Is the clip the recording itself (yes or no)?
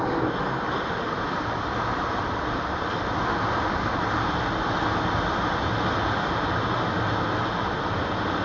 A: yes